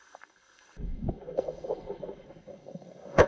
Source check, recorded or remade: remade